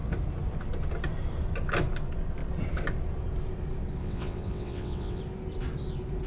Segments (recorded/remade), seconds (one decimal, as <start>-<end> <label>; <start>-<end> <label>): 0.0-4.0 recorded; 4.0-5.2 remade; 5.2-6.3 recorded

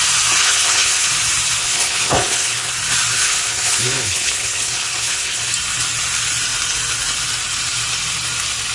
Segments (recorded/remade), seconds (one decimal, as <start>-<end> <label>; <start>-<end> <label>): 0.0-0.4 recorded; 0.4-1.1 remade; 1.1-1.6 recorded; 1.6-2.7 remade; 2.7-3.1 recorded; 3.1-5.4 remade; 5.4-8.7 recorded

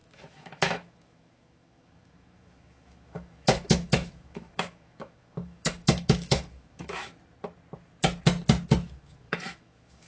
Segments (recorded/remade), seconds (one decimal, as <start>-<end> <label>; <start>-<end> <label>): 0.0-7.1 remade; 7.1-8.8 recorded; 8.8-10.1 remade

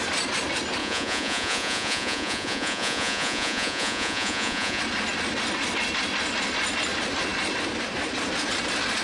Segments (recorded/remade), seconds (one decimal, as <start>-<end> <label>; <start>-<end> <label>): 0.0-0.8 recorded; 0.8-4.8 remade; 4.8-9.0 recorded

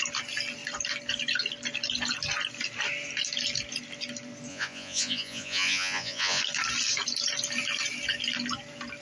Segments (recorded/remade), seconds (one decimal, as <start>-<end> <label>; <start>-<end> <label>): 0.0-4.5 recorded; 4.5-6.4 remade; 6.4-9.0 recorded

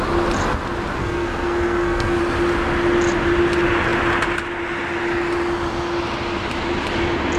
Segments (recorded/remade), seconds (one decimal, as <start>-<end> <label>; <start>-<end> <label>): 0.0-1.0 recorded; 1.0-2.2 remade; 2.2-7.4 recorded

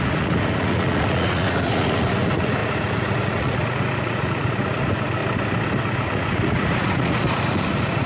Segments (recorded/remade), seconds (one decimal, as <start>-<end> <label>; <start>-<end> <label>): 0.0-5.2 remade; 5.2-5.8 recorded; 5.8-8.1 remade

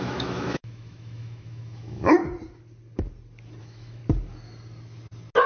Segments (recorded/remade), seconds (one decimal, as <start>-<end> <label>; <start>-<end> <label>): 0.0-2.2 remade; 2.2-3.6 recorded; 3.6-4.0 remade; 4.0-5.5 recorded